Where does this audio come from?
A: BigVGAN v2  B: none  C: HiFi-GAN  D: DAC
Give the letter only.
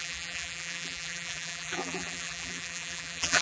A